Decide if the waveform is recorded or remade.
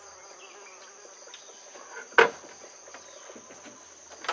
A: recorded